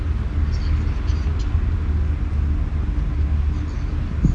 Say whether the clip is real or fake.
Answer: real